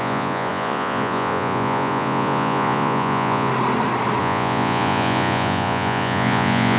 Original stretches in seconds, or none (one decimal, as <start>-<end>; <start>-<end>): 3.5-4.2